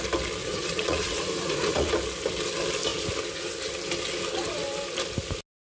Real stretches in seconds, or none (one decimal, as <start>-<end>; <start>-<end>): 0.0-0.4; 1.9-5.7